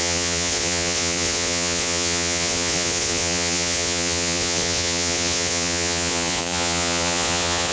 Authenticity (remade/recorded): remade